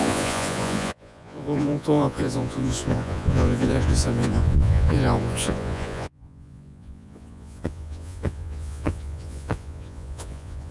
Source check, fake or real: fake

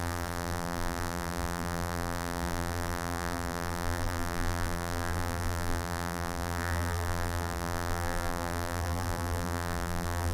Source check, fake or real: fake